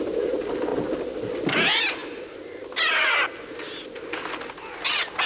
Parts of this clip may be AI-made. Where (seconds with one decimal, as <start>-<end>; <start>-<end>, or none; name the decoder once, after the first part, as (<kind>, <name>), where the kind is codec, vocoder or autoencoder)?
none